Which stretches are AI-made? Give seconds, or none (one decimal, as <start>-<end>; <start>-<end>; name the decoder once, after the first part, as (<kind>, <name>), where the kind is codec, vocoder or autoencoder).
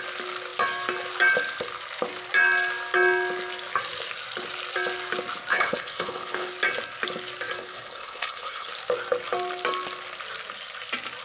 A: 5.5-6.5 (codec, HILCodec); 7.6-8.7